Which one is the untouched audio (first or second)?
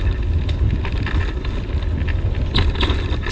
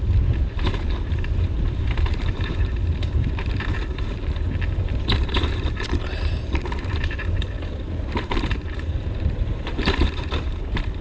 first